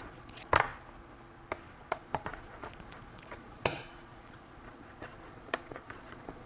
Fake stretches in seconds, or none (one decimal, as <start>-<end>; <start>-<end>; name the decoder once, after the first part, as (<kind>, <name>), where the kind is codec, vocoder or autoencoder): 0.0-0.7 (vocoder, Vocos); 1.7-6.5